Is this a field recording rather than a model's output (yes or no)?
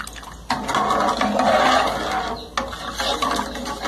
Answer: yes